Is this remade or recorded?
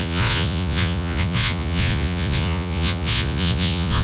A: remade